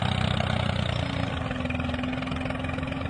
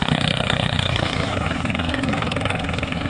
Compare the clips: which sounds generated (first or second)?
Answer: second